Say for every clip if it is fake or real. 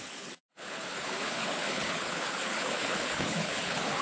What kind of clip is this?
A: fake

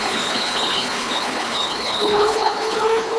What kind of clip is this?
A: fake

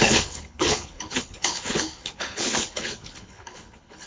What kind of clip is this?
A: fake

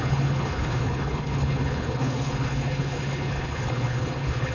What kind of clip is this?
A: fake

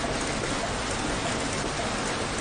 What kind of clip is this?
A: real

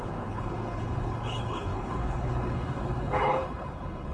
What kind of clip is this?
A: fake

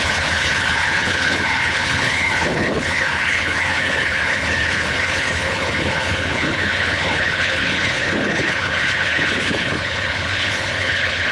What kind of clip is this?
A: fake